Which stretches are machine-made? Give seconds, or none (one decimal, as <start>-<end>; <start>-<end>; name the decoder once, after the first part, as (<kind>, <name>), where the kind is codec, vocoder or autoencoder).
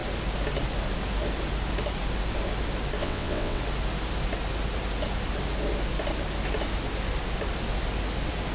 3.0-3.6 (vocoder, WaveNeXt)